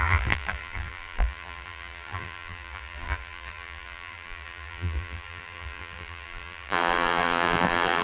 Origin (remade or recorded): remade